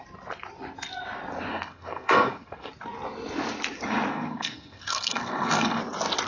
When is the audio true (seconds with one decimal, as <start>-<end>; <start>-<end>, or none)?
0.0-1.5; 2.7-4.1; 5.8-6.3